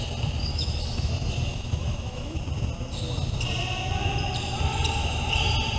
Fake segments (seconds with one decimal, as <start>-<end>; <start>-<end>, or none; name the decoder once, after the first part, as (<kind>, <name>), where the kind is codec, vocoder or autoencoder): 0.5-1.1 (autoencoder, DAC-VAE); 1.5-2.4